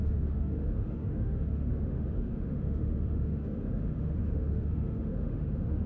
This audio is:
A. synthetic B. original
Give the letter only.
A